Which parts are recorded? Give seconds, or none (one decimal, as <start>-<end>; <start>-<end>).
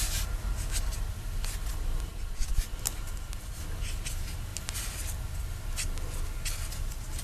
0.0-2.1; 3.6-7.2